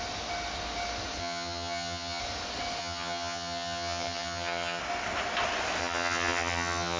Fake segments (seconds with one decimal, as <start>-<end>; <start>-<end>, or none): 1.2-2.2; 2.8-4.8; 5.8-7.0